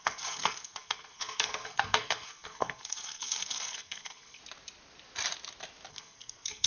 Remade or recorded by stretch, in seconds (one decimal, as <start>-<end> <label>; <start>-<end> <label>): 0.0-4.4 remade; 4.4-5.9 recorded; 5.9-6.7 remade